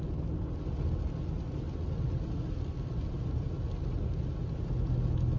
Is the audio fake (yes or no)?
no